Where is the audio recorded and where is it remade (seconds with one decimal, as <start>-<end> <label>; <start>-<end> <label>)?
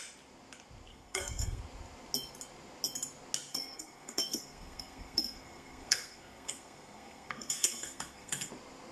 0.0-0.9 recorded; 0.9-1.6 remade; 1.6-3.5 recorded; 3.5-8.5 remade; 8.5-8.9 recorded